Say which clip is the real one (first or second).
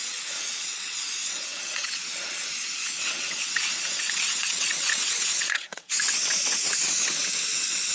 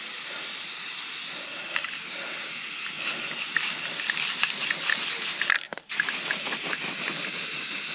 second